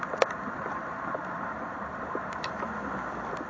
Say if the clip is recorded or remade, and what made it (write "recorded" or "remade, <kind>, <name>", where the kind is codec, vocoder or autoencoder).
recorded